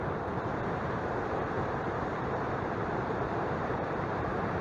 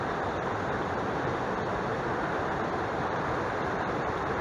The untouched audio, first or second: second